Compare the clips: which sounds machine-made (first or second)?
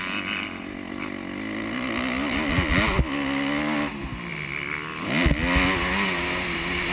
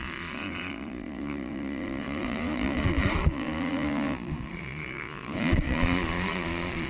second